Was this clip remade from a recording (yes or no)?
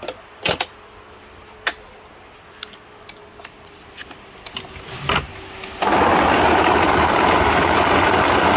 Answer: no